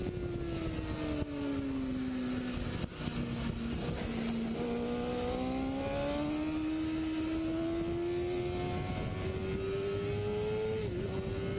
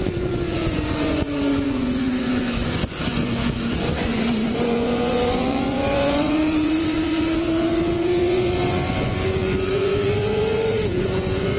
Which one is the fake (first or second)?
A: second